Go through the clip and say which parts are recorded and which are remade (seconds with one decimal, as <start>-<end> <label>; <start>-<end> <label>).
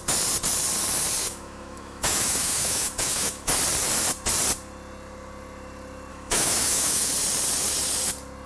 0.0-1.2 recorded; 1.2-3.5 remade; 3.5-6.1 recorded; 6.1-7.1 remade; 7.1-8.5 recorded